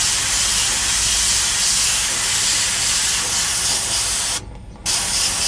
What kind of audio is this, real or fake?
real